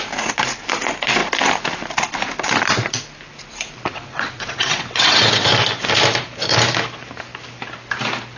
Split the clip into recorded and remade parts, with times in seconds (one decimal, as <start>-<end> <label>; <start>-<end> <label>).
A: 0.0-3.9 recorded; 3.9-5.3 remade; 5.3-8.4 recorded